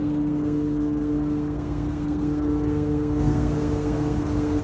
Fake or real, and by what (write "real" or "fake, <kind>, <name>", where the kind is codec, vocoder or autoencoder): fake, codec, SNAC